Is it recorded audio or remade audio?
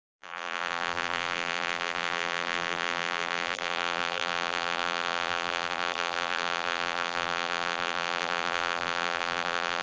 remade